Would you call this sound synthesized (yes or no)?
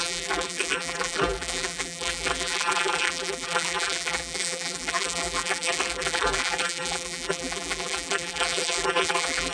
yes